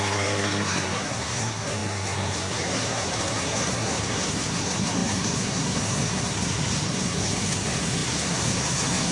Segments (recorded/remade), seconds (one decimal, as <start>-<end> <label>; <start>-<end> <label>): 0.0-9.1 remade